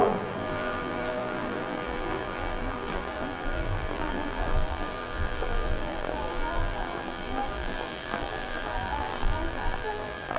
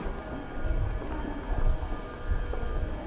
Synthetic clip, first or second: first